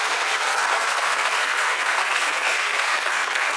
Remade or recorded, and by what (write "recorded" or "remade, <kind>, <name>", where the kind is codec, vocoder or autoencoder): remade, codec, SNAC